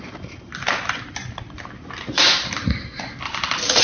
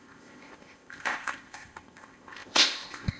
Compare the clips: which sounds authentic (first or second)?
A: first